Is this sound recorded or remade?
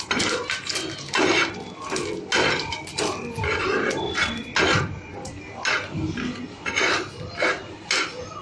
recorded